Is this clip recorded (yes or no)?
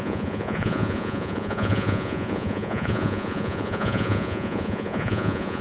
no